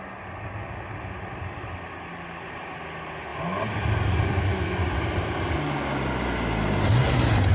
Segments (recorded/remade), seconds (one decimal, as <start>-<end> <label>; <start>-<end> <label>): 0.0-7.5 recorded